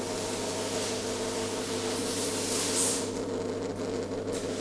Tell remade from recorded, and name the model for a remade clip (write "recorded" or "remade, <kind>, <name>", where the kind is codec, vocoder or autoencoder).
recorded